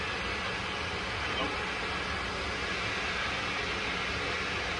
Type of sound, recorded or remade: recorded